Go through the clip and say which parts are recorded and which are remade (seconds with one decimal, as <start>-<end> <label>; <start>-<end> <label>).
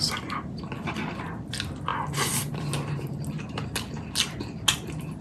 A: 0.0-5.2 recorded